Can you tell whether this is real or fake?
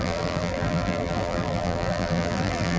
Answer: fake